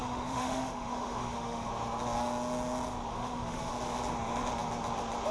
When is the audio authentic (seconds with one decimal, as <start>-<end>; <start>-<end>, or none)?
1.7-3.1; 3.7-5.3

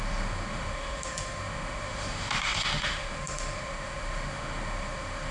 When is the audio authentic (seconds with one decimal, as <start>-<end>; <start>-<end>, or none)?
none